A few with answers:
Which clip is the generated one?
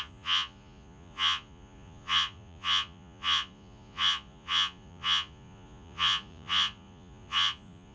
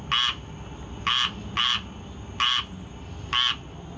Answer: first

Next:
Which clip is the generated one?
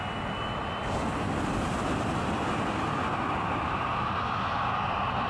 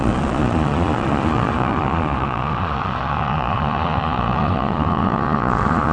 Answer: second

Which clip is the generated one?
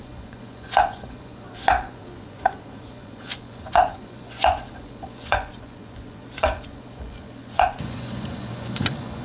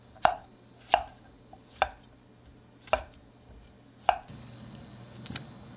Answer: first